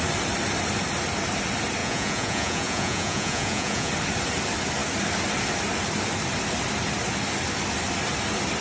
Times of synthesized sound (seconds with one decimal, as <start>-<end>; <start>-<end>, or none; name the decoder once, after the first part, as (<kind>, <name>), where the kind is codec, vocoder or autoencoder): 1.8-3.9 (vocoder, Vocos)